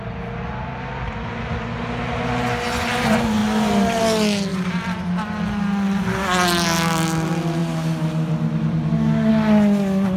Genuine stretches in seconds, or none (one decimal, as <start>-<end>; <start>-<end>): 0.0-4.5; 5.4-10.2